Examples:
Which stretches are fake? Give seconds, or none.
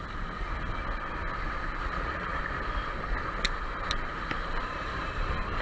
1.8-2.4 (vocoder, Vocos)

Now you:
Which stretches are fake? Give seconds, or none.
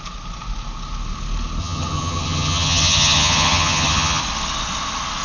1.6-4.2 (vocoder, HiFi-GAN)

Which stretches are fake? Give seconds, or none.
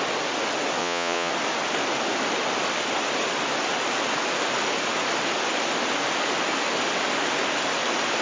0.8-1.3 (vocoder, Vocos)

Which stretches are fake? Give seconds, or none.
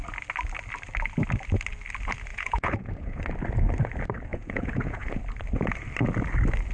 2.3-3.2 (vocoder, Vocos); 4.3-5.2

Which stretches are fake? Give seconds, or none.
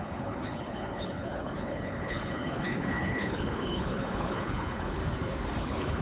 0.0-5.0 (codec, HILCodec); 5.6-6.0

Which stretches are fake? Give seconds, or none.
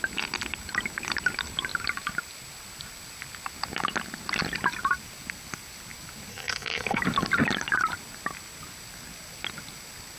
6.3-7.0 (codec, SNAC)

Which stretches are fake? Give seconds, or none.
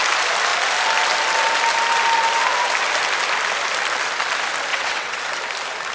4.7-5.2 (vocoder, WaveNeXt)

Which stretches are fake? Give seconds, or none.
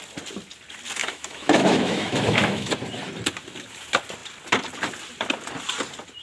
1.0-2.7 (autoencoder, DAC-VAE)